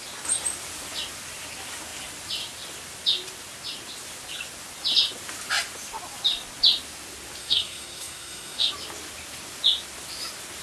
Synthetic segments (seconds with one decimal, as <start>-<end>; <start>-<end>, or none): 7.4-8.7